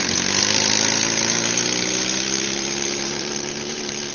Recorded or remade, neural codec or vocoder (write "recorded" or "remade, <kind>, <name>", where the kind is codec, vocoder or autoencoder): remade, vocoder, BigVGAN v2